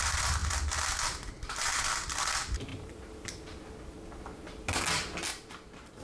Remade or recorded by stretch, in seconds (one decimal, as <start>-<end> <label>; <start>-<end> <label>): 0.0-2.7 recorded; 2.7-3.3 remade; 3.3-5.3 recorded; 5.3-6.0 remade